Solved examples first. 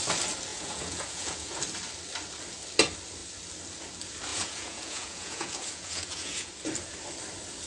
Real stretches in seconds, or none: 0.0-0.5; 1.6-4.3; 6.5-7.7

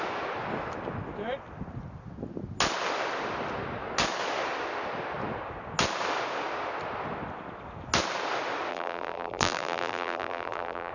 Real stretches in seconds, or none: 0.0-8.7

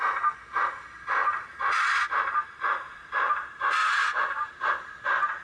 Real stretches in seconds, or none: 0.0-1.2; 1.8-3.8; 4.9-5.4

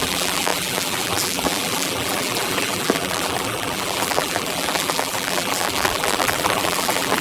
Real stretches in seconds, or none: none